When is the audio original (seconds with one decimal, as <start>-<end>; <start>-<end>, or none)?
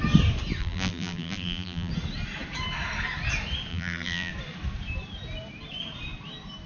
0.0-0.6; 1.9-3.7; 4.3-6.7